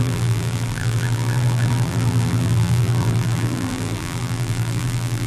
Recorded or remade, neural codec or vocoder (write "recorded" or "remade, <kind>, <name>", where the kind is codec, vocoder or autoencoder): remade, vocoder, BigVGAN v2